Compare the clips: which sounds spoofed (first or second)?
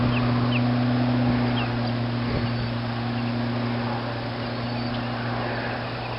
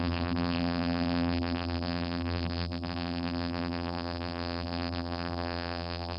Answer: second